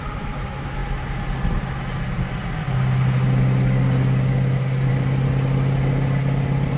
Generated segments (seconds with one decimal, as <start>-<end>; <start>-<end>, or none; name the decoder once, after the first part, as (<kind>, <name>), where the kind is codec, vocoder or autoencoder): none